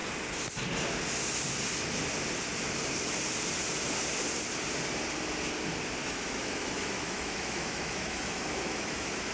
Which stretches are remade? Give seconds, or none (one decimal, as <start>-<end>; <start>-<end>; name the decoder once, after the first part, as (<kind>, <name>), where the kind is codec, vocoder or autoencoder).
6.0-9.3 (autoencoder, DAC-VAE)